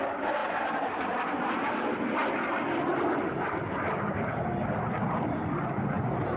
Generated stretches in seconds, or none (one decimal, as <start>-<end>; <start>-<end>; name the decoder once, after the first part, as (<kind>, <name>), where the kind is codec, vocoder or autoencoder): 0.0-6.4 (vocoder, BigVGAN v2)